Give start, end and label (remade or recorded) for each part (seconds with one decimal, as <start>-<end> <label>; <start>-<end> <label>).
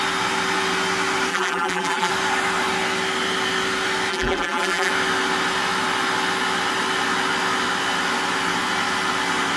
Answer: 0.0-1.3 recorded; 1.3-2.1 remade; 2.1-4.1 recorded; 4.1-4.9 remade; 4.9-9.6 recorded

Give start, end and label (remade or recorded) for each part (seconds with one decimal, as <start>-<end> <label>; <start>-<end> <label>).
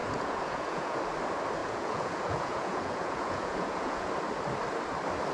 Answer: 0.0-1.0 remade; 1.0-1.6 recorded; 1.6-4.1 remade; 4.1-5.3 recorded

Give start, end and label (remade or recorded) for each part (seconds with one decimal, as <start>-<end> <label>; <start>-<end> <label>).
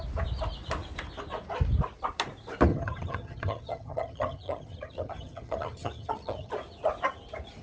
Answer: 0.0-2.7 recorded; 2.7-6.5 remade; 6.5-7.6 recorded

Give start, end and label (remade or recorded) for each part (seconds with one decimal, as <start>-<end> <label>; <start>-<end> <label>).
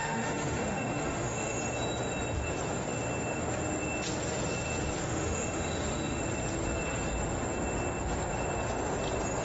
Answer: 0.0-1.6 remade; 1.6-5.0 recorded; 5.0-6.2 remade; 6.2-9.4 recorded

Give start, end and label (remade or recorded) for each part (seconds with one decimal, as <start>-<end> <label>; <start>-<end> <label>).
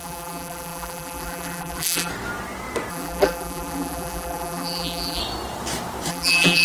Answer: 0.0-2.1 remade; 2.1-2.9 recorded; 2.9-5.2 remade; 5.2-6.1 recorded; 6.1-6.6 remade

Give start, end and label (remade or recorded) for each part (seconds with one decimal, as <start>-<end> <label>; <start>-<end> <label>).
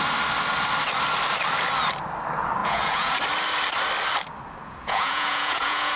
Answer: 0.0-2.6 recorded; 2.6-3.1 remade; 3.1-4.6 recorded; 4.6-6.0 remade